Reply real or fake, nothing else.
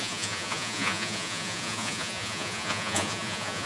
fake